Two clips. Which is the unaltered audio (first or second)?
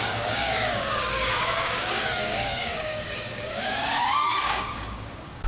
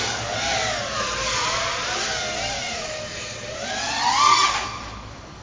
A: second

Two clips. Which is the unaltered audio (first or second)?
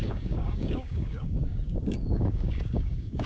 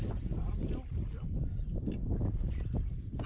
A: second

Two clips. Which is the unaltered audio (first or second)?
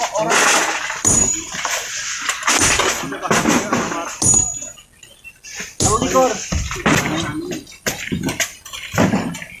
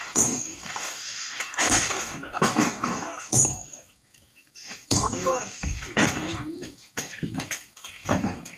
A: first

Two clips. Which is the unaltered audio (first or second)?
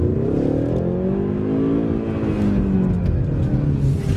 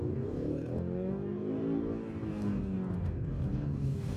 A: first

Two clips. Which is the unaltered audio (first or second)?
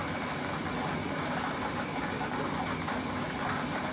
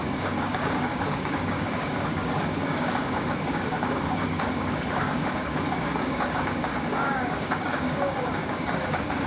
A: first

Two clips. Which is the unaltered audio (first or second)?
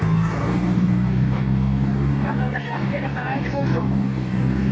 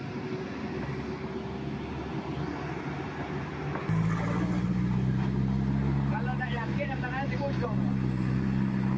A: second